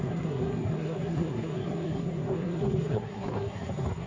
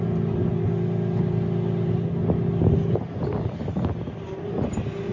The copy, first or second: first